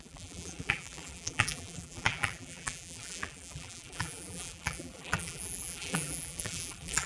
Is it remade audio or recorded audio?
remade